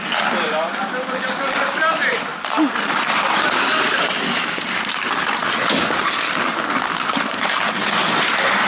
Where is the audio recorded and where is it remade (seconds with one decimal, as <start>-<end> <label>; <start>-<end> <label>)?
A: 0.0-8.7 recorded